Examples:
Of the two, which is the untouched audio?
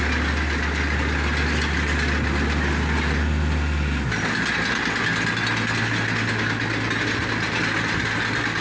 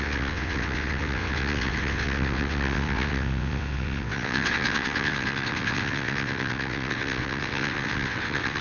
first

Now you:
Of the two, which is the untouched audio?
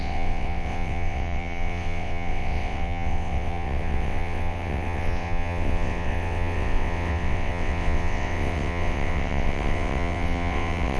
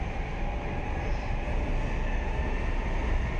second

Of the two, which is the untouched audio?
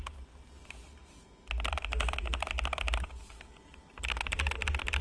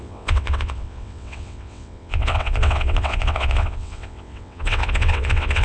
first